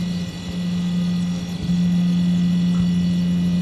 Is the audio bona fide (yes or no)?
yes